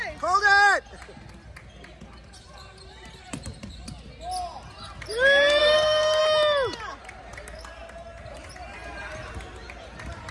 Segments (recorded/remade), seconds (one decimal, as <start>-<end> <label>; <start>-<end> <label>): 0.0-5.6 recorded; 5.6-6.2 remade; 6.2-10.3 recorded